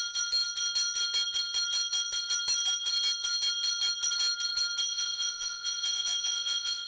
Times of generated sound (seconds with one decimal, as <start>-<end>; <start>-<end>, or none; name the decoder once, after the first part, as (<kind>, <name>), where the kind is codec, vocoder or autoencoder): 4.9-6.9 (vocoder, Vocos)